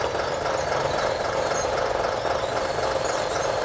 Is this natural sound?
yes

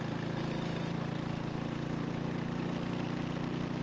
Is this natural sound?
yes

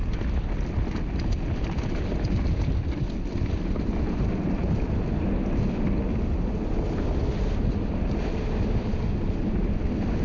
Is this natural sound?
yes